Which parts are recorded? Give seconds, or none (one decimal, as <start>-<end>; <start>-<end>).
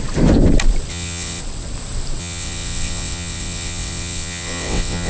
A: 0.0-0.9; 1.4-2.2